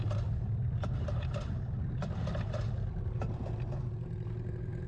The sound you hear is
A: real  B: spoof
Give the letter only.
A